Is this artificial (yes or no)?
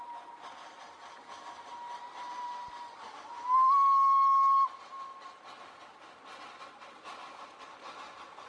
no